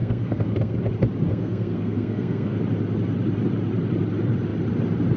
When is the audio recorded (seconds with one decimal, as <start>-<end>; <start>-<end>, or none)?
0.8-1.3; 2.6-5.2